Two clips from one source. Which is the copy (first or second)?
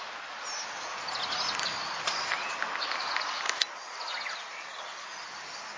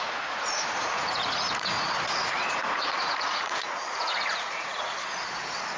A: second